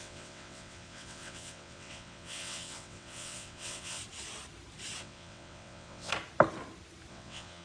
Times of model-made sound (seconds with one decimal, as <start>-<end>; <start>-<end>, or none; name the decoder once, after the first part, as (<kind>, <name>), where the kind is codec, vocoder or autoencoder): 0.0-4.0 (vocoder, WaveNeXt); 5.0-6.1; 7.1-7.6